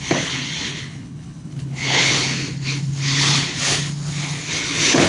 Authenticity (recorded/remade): remade